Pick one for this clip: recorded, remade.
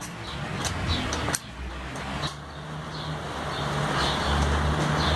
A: recorded